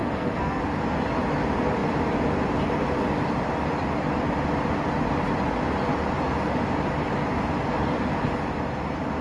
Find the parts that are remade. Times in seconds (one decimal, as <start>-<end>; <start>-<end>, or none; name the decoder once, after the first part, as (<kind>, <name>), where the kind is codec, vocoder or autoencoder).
0.0-0.6 (codec, SNAC)